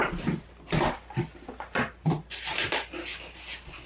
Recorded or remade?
recorded